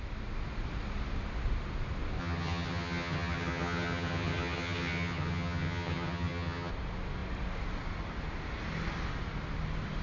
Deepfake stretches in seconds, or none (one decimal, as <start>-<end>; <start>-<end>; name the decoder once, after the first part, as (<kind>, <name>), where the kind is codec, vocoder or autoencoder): 2.2-6.7 (vocoder, HiFi-GAN)